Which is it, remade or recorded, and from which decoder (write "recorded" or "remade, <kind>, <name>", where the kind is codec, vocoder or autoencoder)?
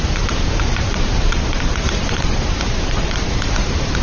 remade, vocoder, BigVGAN v2